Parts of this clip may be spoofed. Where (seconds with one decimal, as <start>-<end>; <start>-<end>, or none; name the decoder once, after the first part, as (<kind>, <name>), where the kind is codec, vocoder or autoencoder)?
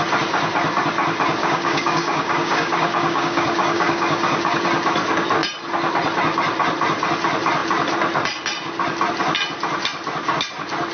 1.4-4.6 (codec, DAC)